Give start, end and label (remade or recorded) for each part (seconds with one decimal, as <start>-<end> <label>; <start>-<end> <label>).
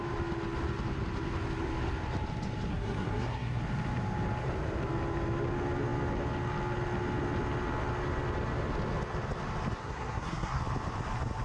0.0-2.7 recorded; 2.7-3.6 remade; 3.6-9.8 recorded; 9.8-10.6 remade; 10.6-11.4 recorded